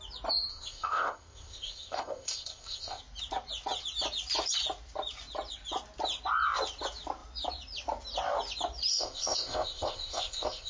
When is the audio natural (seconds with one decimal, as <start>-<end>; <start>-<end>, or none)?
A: 0.0-0.5; 3.0-8.9